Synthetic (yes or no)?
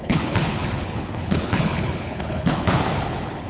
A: yes